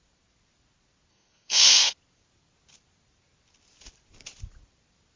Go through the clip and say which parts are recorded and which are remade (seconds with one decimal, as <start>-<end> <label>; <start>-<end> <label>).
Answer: 0.0-1.1 recorded; 1.1-1.9 remade; 1.9-5.2 recorded